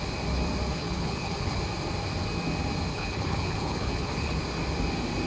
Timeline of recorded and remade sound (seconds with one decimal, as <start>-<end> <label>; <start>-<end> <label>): 0.0-0.8 recorded; 0.8-1.6 remade; 1.6-2.9 recorded; 2.9-4.4 remade; 4.4-5.3 recorded